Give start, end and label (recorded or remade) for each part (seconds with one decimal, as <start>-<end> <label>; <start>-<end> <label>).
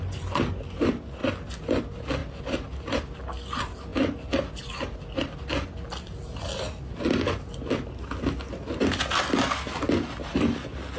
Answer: 0.0-2.2 recorded; 2.2-3.2 remade; 3.2-11.0 recorded